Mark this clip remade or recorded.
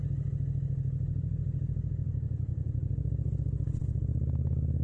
recorded